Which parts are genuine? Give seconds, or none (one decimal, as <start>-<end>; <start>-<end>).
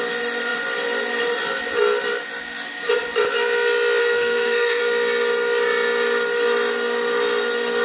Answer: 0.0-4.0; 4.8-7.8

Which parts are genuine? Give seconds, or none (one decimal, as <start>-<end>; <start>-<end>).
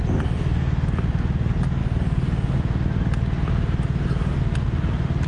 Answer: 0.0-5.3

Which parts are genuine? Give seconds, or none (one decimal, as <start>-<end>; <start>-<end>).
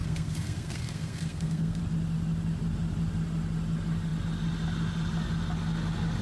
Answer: 1.8-6.2